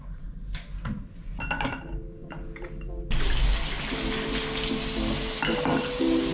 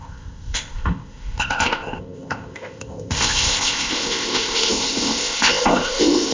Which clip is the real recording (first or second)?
first